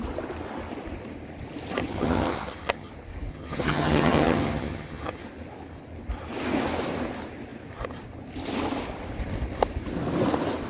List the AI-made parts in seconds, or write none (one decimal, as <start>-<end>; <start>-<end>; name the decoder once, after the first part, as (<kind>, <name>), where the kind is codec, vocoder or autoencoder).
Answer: 1.8-2.9 (vocoder, HiFi-GAN); 3.3-5.2